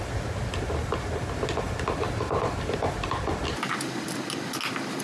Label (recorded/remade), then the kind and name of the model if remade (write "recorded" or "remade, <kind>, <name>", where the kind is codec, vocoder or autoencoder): recorded